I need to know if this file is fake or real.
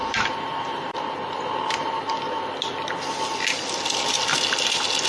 real